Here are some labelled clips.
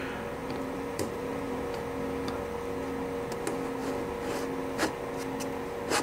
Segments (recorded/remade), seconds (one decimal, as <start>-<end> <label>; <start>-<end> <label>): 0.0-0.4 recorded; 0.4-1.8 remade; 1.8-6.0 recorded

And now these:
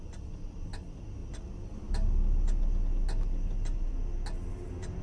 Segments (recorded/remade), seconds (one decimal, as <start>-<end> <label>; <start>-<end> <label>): 0.0-5.0 recorded

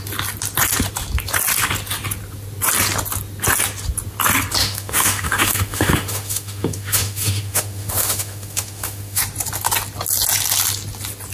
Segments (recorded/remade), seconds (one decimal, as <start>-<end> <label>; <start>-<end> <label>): 0.0-4.6 recorded; 4.6-9.2 remade; 9.2-11.3 recorded